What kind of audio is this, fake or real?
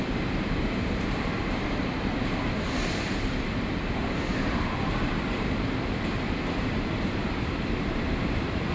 fake